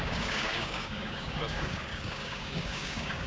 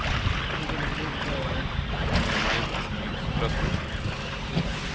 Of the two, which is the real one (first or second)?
second